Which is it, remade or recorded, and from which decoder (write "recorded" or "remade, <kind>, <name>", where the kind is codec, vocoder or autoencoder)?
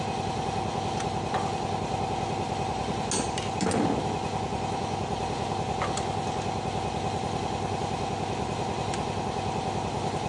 recorded